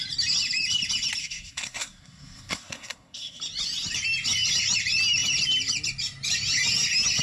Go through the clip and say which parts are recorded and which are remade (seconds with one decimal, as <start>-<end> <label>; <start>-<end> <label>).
0.0-1.2 recorded; 1.2-3.4 remade; 3.4-7.2 recorded